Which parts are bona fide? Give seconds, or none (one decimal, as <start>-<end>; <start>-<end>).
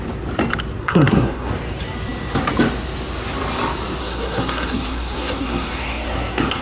0.0-0.8; 1.5-4.0